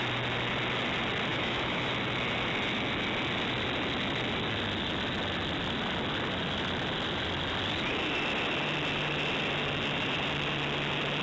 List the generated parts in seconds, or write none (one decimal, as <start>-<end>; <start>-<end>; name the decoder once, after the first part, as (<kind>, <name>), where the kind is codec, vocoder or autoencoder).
1.3-1.9 (autoencoder, DAC-VAE)